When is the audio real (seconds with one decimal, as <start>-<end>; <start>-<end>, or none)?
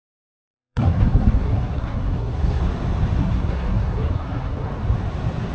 2.6-3.2; 4.7-5.5